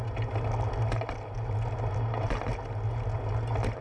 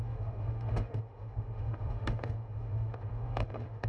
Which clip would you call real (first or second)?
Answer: first